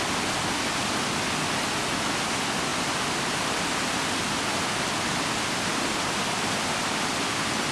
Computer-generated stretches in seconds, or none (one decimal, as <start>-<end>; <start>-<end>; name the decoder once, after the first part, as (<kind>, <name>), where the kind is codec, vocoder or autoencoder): none